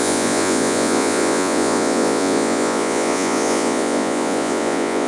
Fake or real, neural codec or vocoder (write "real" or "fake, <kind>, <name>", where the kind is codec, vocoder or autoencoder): fake, vocoder, Vocos